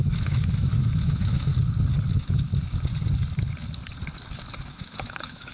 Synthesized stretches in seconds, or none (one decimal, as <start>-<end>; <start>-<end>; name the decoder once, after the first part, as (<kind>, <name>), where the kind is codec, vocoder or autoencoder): 0.0-1.5 (autoencoder, DAC-VAE); 2.1-2.5; 4.7-5.5